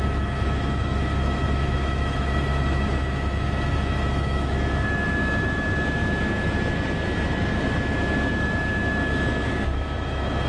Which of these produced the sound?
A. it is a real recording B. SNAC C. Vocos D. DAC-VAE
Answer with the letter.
D